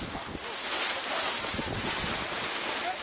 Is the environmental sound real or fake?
real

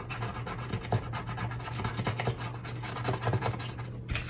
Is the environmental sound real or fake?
real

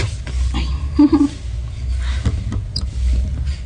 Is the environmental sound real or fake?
real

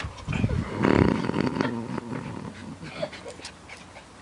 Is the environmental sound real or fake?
real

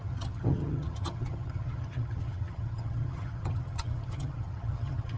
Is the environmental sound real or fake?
fake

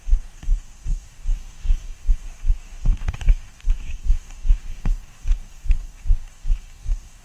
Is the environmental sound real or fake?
fake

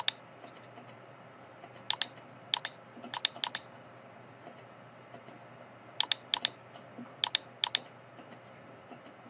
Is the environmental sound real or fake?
real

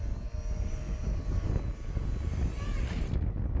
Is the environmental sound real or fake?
real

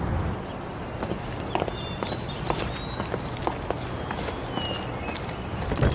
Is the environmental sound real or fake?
real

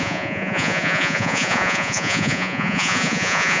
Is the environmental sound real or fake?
fake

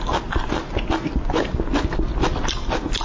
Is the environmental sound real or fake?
real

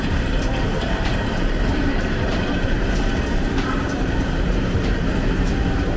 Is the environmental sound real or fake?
fake